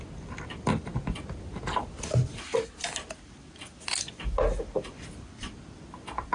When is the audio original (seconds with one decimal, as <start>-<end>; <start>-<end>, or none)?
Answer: 0.0-6.3